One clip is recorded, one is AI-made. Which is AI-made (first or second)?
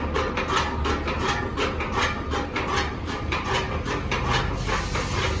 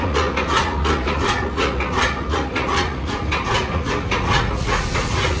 second